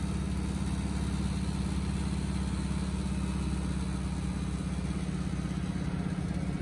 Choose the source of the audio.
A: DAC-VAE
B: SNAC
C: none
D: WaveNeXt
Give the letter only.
C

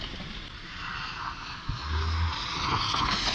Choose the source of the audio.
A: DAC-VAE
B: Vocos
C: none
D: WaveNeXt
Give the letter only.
C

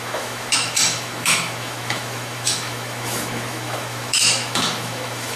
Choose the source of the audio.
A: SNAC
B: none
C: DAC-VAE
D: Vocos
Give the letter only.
C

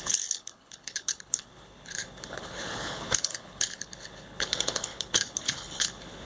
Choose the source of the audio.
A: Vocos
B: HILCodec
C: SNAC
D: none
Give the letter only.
B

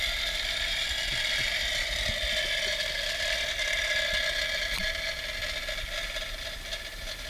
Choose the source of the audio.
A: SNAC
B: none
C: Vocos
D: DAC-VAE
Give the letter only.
B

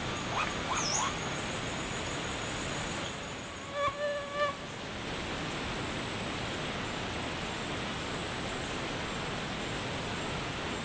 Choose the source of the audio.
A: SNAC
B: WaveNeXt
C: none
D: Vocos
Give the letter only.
C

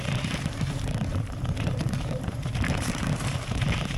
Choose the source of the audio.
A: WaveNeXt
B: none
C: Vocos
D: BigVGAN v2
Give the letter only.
D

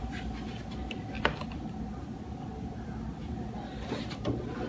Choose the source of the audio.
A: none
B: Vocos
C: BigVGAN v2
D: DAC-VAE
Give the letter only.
A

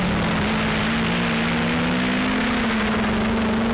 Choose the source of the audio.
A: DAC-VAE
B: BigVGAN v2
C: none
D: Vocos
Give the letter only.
C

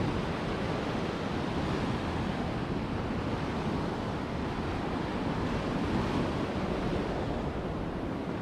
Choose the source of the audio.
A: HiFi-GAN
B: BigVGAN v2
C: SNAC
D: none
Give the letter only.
D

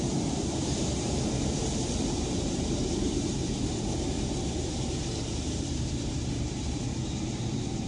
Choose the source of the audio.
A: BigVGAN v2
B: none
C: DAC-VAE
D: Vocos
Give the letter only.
A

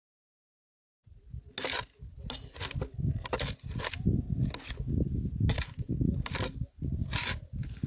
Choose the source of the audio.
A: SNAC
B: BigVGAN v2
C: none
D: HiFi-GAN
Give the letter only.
C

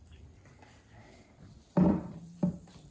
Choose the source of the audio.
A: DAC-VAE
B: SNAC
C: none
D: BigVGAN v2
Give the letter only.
D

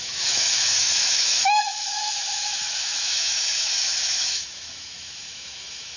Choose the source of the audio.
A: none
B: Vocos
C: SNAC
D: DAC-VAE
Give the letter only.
D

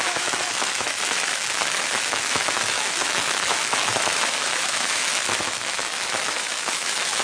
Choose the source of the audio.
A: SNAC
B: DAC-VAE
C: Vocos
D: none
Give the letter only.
B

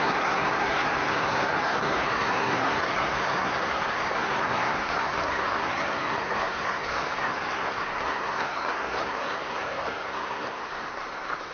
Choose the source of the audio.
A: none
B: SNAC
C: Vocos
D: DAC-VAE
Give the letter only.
B